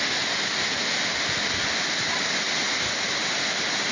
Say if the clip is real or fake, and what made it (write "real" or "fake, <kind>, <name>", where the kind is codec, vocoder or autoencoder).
real